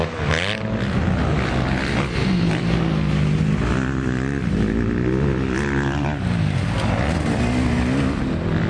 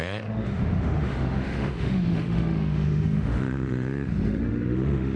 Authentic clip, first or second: first